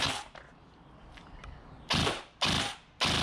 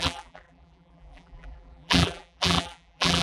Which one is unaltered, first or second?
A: first